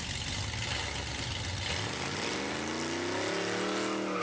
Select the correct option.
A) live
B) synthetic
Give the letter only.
A